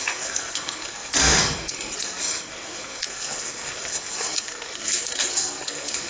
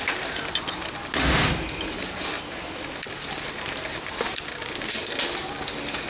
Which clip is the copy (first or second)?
first